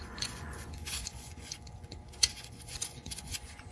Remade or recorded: remade